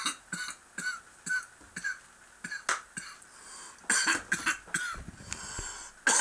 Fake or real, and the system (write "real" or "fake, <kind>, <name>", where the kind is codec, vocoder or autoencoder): real